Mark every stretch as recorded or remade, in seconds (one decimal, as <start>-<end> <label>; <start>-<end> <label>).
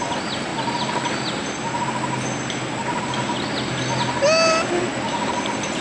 0.0-5.8 recorded